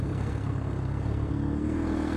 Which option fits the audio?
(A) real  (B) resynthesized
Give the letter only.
B